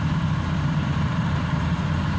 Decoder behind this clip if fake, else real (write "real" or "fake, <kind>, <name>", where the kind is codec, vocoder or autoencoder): fake, vocoder, BigVGAN v2